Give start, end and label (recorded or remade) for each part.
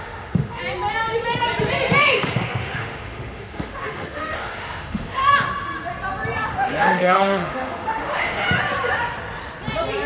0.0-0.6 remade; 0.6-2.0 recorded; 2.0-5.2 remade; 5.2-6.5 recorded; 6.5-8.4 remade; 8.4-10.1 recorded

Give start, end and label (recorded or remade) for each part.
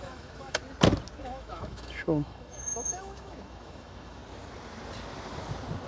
0.0-0.6 remade; 0.6-1.2 recorded; 1.2-4.2 remade; 4.2-5.9 recorded